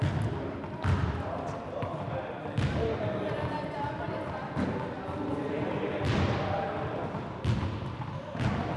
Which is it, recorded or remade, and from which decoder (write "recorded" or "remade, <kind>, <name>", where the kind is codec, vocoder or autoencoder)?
recorded